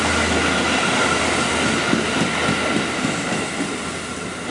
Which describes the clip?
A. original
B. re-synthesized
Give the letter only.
A